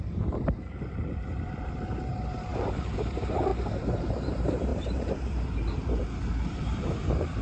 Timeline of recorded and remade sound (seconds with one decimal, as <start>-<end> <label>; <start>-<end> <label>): 0.0-3.5 remade; 3.5-4.1 recorded; 4.1-7.4 remade